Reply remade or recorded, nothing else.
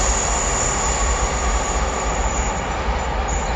recorded